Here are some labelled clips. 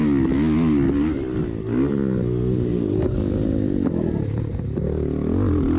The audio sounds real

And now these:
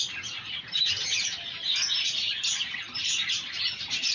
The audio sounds real